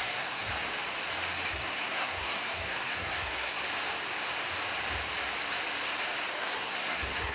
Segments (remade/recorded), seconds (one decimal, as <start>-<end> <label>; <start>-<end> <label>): 0.0-0.5 remade; 0.5-1.5 recorded; 1.5-3.6 remade; 3.6-6.4 recorded; 6.4-7.3 remade